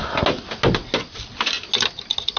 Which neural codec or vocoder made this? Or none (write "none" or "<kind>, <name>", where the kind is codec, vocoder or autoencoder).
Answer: none